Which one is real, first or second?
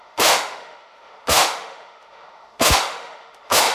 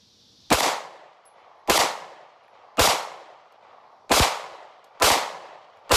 second